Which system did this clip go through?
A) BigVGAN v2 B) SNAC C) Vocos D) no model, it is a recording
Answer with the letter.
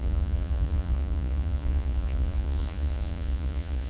C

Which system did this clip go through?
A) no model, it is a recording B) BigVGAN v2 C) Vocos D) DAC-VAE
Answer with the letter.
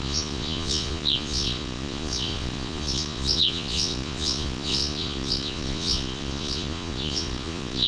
C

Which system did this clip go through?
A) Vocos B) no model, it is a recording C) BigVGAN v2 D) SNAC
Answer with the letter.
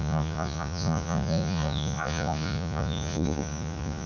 A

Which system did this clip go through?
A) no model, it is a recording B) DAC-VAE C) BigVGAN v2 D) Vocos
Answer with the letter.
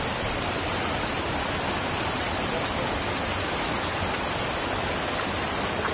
A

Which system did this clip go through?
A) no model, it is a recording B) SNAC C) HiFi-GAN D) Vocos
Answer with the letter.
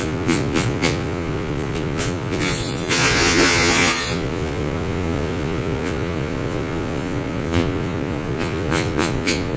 D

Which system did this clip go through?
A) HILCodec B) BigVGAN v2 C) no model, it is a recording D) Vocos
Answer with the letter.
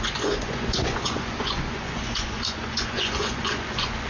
D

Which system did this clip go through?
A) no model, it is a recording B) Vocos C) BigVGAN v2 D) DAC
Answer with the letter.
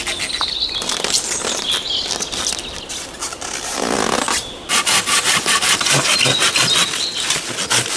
A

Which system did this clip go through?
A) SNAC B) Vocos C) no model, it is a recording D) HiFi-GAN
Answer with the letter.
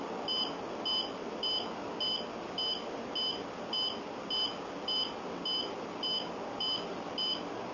C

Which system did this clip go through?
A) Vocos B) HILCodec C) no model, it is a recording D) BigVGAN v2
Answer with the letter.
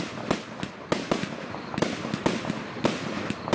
C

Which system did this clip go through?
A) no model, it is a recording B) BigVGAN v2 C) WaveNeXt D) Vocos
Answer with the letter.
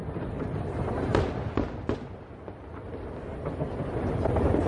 A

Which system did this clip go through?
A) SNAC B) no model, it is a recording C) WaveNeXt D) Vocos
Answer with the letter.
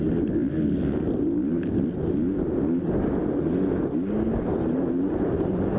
B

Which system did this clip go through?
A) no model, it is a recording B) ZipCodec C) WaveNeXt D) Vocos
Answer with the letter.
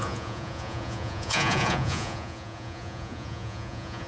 D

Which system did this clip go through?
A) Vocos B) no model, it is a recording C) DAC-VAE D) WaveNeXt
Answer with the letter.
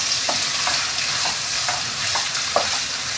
B